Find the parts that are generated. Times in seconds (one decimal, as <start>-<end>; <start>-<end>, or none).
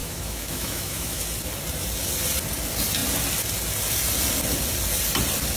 0.0-1.2